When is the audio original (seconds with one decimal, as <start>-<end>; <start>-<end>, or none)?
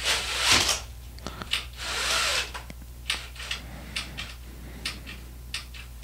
0.0-6.0